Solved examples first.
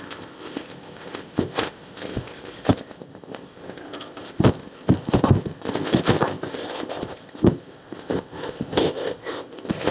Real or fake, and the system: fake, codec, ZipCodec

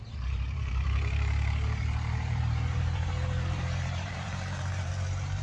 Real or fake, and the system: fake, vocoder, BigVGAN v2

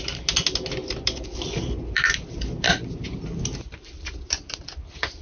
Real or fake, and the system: real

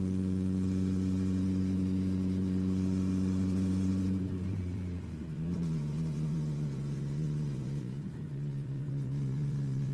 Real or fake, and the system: fake, vocoder, Vocos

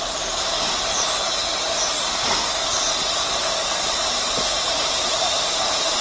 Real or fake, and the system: fake, vocoder, BigVGAN v2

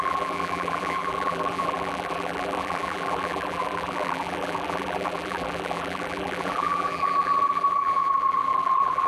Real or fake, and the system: fake, vocoder, BigVGAN v2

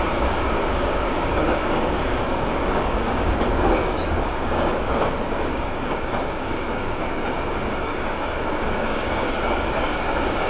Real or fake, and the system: fake, codec, DAC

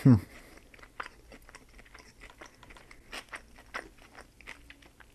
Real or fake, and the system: real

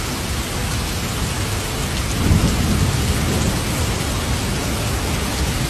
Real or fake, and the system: real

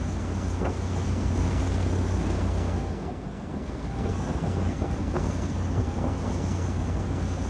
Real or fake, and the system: fake, codec, SNAC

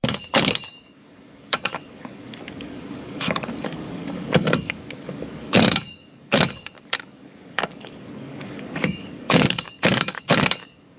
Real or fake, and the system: fake, codec, DAC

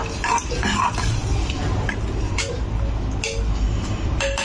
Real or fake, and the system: real